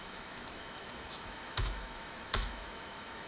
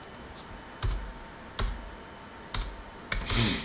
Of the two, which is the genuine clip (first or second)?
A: second